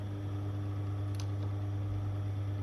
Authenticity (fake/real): real